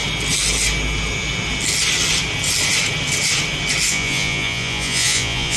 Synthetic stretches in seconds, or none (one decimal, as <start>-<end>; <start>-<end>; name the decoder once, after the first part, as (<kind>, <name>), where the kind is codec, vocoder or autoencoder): 3.9-5.6 (vocoder, Vocos)